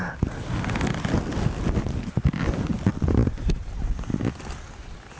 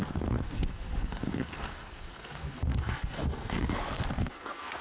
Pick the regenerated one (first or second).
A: second